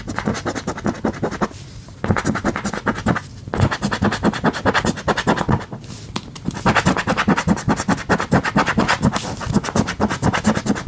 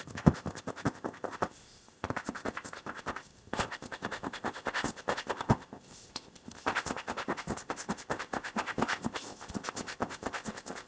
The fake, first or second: second